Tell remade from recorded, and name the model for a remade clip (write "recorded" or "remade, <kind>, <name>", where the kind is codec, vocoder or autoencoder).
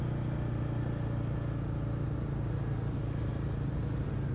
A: recorded